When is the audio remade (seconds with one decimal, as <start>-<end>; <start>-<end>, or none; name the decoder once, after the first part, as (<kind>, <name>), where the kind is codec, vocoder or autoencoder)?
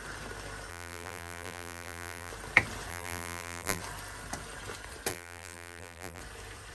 0.7-2.3 (vocoder, BigVGAN v2); 2.9-3.8; 5.1-6.2